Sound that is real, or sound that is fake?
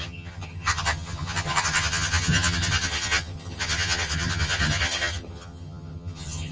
fake